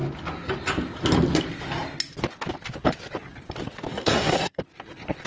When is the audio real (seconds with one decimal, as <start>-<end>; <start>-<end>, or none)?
0.0-3.9; 4.6-5.3